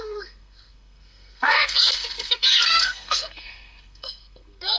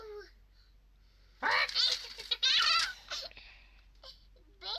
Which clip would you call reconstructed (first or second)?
first